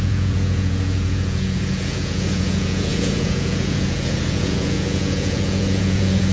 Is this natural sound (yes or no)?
no